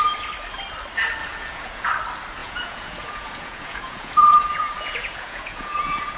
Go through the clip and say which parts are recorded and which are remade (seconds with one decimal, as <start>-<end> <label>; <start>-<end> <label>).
0.0-1.2 recorded; 1.2-1.9 remade; 1.9-2.4 recorded; 2.4-6.2 remade